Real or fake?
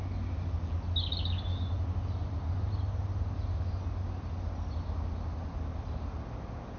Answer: real